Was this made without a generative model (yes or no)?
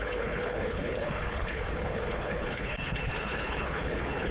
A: no